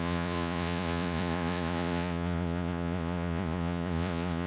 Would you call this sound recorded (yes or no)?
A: no